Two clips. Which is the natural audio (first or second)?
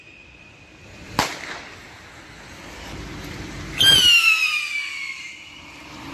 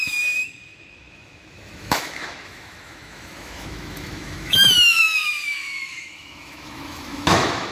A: first